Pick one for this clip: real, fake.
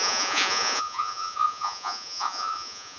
fake